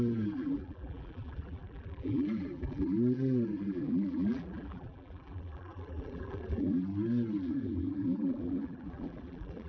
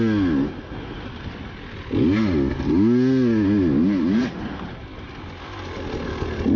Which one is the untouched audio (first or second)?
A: second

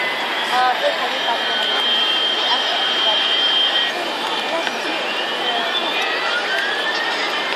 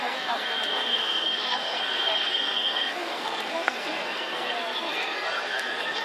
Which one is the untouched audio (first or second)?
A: first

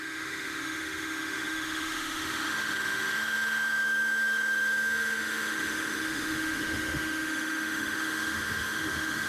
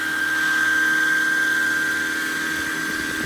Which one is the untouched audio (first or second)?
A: second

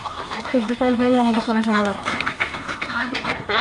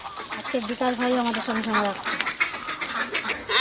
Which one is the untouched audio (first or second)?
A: second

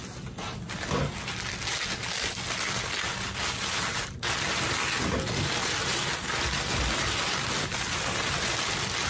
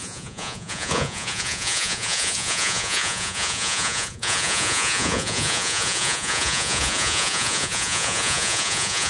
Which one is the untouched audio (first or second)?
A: first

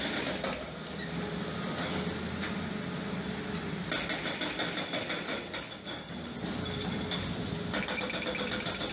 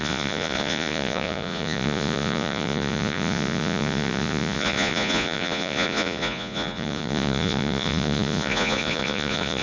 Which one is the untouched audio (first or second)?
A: first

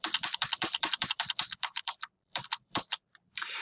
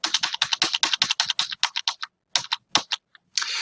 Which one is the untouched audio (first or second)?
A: second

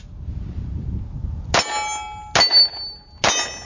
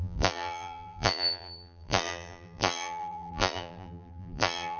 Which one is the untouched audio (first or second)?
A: first